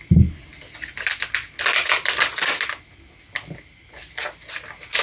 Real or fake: real